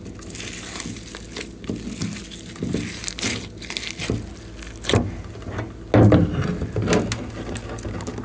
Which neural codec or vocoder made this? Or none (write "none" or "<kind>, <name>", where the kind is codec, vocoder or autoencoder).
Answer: none